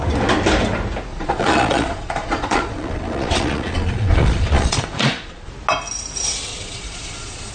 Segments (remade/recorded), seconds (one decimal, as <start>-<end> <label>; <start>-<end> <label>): 0.0-1.1 recorded; 1.1-5.5 remade; 5.5-6.5 recorded; 6.5-7.5 remade